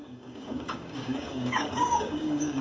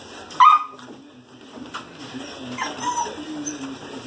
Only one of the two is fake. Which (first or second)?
first